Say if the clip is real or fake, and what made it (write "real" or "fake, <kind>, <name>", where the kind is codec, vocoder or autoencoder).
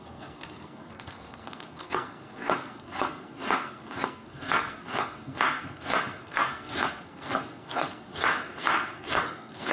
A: fake, codec, SNAC